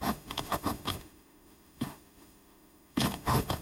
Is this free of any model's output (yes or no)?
no